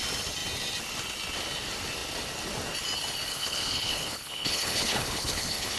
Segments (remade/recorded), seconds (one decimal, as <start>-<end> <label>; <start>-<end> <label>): 0.0-3.3 recorded; 3.3-5.8 remade